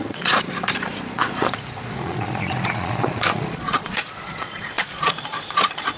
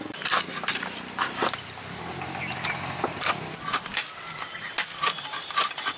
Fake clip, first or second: first